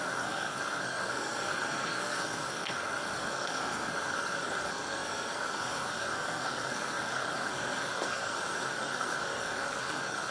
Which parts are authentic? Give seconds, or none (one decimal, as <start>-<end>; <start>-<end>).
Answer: none